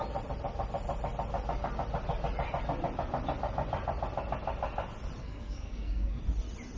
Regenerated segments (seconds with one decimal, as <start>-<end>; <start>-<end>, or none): 5.2-6.2